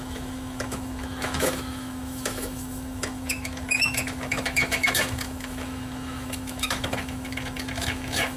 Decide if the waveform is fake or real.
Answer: fake